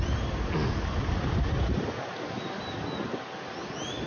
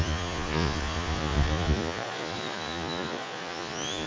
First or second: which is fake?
second